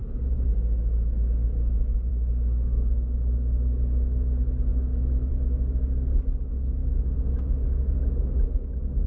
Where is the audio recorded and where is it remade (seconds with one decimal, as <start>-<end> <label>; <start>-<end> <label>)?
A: 0.0-4.7 recorded; 4.7-5.3 remade; 5.3-6.8 recorded; 6.8-7.8 remade; 7.8-9.1 recorded